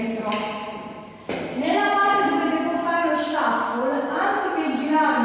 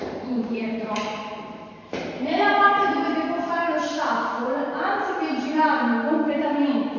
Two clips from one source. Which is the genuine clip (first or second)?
first